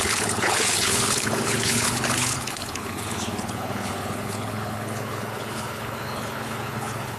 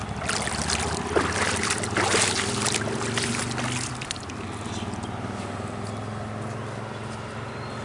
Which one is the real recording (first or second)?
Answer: second